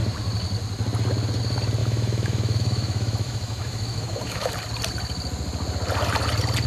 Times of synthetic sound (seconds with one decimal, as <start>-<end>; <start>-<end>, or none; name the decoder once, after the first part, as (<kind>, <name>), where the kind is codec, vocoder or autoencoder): 1.8-4.5 (autoencoder, DAC-VAE)

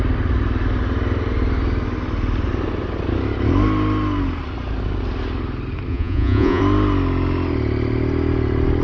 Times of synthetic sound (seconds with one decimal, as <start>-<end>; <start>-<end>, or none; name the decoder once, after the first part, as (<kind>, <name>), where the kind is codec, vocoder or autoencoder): 5.9-6.6 (vocoder, Vocos)

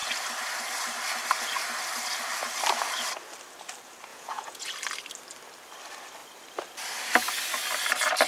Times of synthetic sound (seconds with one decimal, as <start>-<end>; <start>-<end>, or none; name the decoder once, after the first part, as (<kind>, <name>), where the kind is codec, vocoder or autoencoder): 4.1-4.7 (vocoder, Vocos)

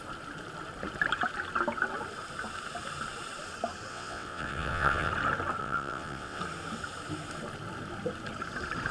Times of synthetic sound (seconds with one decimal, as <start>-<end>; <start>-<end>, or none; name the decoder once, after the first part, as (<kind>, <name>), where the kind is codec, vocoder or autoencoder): 3.9-5.1 (vocoder, WaveNeXt); 5.6-6.4

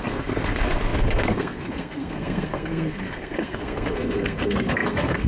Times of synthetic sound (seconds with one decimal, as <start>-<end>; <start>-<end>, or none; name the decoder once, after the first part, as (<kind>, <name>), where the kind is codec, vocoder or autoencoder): 0.0-5.3 (codec, SNAC)

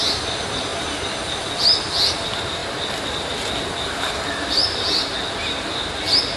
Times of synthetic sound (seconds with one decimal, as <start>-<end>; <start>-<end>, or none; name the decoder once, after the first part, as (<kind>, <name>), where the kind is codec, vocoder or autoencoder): none